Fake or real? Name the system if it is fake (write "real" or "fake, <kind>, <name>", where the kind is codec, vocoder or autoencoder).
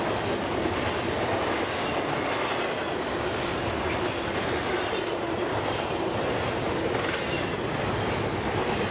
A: real